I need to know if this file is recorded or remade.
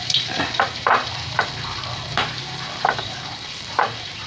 remade